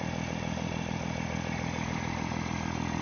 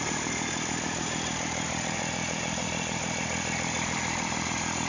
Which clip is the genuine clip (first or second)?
first